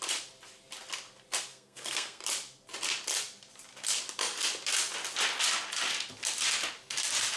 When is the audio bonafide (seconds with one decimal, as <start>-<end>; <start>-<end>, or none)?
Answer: 0.0-1.5; 2.2-7.4